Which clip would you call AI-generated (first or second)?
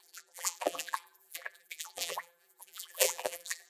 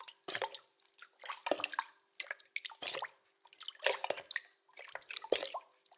first